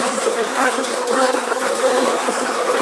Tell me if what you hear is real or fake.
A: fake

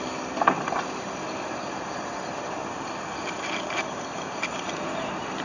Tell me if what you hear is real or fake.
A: real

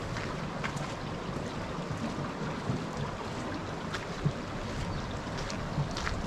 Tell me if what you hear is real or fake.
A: real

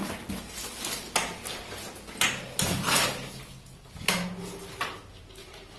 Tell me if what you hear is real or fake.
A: real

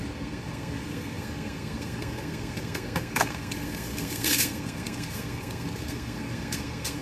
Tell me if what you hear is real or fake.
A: fake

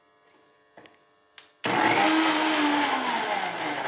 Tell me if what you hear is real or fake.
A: real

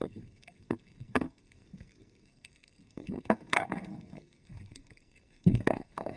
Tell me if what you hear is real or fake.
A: fake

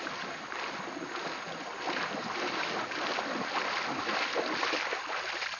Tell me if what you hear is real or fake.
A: real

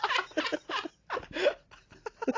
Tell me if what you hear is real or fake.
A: real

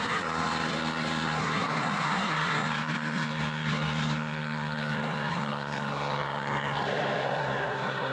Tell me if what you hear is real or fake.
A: fake